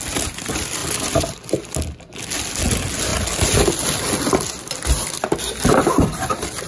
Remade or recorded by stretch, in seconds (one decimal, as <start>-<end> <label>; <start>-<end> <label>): 0.0-6.7 recorded

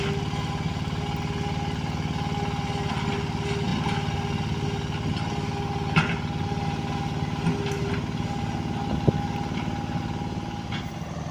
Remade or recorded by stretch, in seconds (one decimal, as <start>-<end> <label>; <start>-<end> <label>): 0.0-11.3 recorded

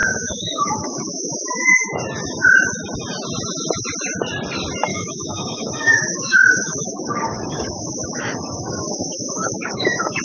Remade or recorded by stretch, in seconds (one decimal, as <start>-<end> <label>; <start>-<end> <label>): 0.0-1.2 remade; 1.2-4.9 recorded; 4.9-10.2 remade

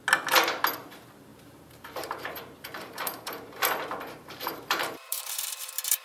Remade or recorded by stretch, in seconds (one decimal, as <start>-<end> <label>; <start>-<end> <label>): 0.0-0.8 recorded; 0.8-6.0 remade

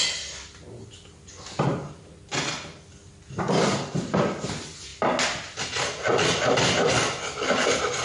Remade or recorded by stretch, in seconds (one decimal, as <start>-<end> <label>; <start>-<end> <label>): 0.0-8.0 recorded

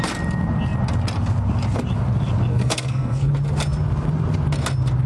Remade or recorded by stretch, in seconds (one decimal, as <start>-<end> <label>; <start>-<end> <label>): 0.0-2.5 recorded; 2.5-3.3 remade; 3.3-5.1 recorded